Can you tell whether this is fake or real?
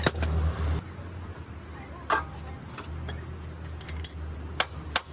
real